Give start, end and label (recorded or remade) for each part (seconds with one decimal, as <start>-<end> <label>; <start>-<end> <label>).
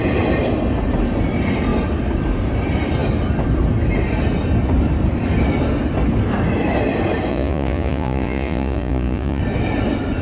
0.0-7.3 recorded; 7.3-9.4 remade; 9.4-10.2 recorded